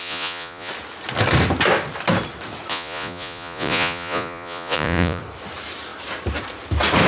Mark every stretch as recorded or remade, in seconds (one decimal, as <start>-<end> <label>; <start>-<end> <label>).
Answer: 0.0-0.7 remade; 0.7-2.7 recorded; 2.7-5.2 remade; 5.2-7.1 recorded